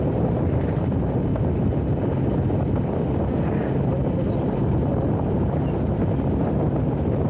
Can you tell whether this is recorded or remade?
recorded